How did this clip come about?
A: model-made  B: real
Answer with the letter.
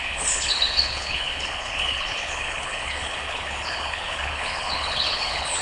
A